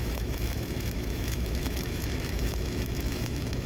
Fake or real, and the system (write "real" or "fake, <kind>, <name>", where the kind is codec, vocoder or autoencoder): fake, autoencoder, DAC-VAE